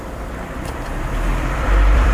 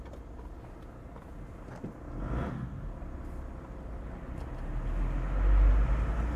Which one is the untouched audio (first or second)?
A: second